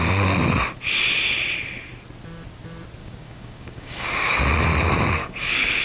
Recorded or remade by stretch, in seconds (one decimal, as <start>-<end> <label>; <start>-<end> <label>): 0.0-3.0 recorded; 3.0-4.4 remade; 4.4-5.2 recorded; 5.2-5.8 remade